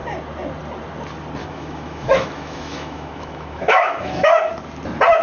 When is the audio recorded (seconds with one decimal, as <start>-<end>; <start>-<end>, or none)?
0.0-1.4; 4.5-5.2